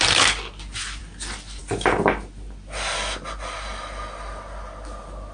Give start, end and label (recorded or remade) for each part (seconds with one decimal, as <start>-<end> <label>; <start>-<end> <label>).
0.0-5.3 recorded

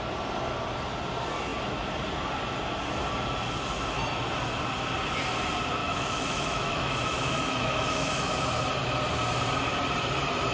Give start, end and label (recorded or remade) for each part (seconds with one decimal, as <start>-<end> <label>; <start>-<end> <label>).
0.0-5.8 recorded; 5.8-8.3 remade; 8.3-10.5 recorded

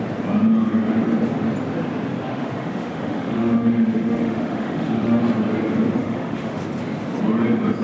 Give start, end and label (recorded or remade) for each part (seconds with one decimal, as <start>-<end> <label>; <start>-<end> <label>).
0.0-2.3 recorded; 2.3-5.2 remade; 5.2-6.0 recorded; 6.0-6.6 remade; 6.6-7.8 recorded

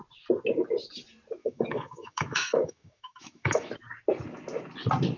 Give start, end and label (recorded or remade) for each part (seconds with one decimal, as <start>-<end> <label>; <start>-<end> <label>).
0.0-1.4 recorded; 1.4-3.7 remade; 3.7-5.2 recorded

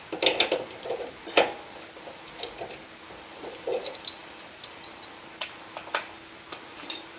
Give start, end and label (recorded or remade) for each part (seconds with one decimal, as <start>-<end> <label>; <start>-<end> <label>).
0.0-7.2 recorded